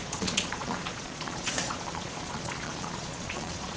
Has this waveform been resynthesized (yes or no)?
yes